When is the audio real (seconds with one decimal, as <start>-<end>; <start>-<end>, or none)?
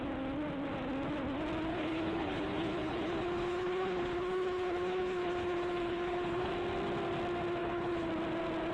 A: 0.0-1.7; 6.5-7.6; 8.1-8.7